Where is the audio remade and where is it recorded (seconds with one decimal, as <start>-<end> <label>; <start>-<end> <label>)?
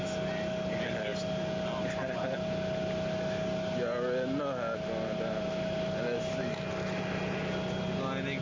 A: 0.0-8.4 recorded